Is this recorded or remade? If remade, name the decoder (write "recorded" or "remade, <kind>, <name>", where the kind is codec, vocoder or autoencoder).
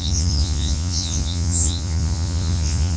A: remade, vocoder, Vocos